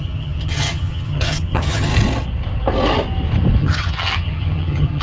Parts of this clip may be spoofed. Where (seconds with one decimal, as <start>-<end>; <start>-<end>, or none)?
0.0-1.9; 3.6-5.0